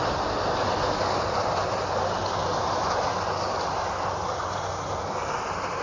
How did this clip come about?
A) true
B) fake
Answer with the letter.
A